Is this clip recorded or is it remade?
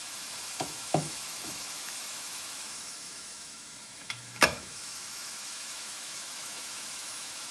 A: remade